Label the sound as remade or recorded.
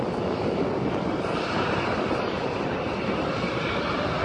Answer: recorded